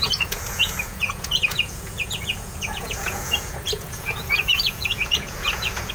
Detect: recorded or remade remade